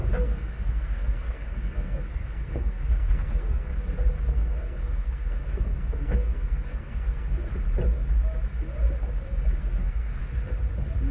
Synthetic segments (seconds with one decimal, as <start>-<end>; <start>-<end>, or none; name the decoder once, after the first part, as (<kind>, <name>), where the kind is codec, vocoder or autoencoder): 0.0-3.7 (codec, SNAC); 4.3-7.5; 9.6-10.2

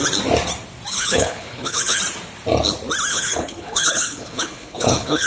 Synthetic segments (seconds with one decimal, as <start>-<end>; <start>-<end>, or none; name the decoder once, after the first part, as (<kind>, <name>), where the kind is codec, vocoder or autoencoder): 0.9-2.0 (codec, HILCodec); 3.1-5.3

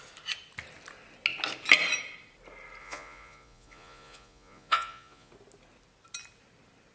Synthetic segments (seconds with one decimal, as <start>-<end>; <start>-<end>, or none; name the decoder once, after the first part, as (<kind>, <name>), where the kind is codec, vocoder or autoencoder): 2.8-5.3 (vocoder, Vocos)

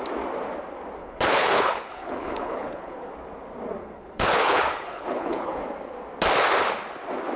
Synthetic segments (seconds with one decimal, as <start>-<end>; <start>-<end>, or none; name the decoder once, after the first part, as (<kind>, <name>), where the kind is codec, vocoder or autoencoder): 1.0-3.1 (codec, HILCodec); 3.8-5.6

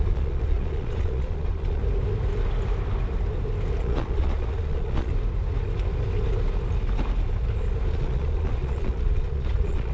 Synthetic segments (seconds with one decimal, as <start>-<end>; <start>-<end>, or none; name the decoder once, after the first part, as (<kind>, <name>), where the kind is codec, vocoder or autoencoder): 0.0-1.8 (vocoder, Vocos); 3.8-5.1; 7.9-9.9

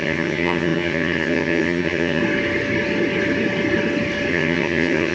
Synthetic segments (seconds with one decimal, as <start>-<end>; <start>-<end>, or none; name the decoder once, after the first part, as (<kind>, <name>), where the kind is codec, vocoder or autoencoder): 0.0-2.2 (vocoder, HiFi-GAN); 4.3-5.1

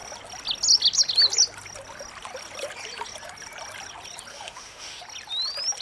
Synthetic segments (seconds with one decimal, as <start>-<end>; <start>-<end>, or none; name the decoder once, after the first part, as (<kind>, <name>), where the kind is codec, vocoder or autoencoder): 4.3-5.0 (autoencoder, DAC-VAE)

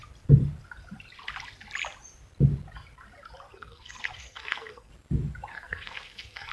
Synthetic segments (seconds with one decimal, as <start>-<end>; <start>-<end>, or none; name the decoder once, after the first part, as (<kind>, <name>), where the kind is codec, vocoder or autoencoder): 3.5-4.9 (codec, SNAC); 5.5-6.5